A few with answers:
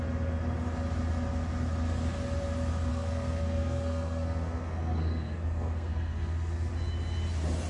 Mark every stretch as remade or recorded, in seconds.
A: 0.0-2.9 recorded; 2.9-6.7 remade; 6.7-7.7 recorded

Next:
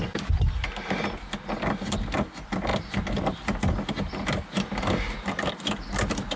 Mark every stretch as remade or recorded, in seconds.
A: 0.0-6.4 recorded